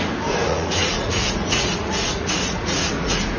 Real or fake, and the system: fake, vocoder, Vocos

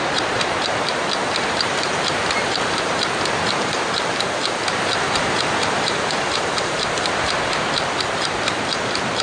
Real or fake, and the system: fake, vocoder, BigVGAN v2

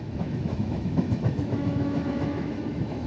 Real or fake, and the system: fake, autoencoder, DAC-VAE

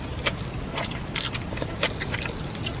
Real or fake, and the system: real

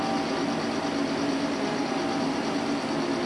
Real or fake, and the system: real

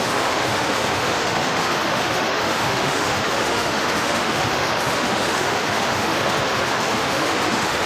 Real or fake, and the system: fake, autoencoder, DAC-VAE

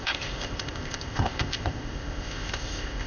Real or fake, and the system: fake, codec, ZipCodec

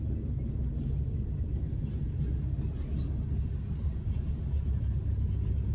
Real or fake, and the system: real